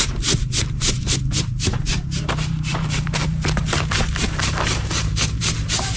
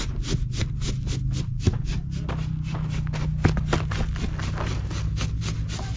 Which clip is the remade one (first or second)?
first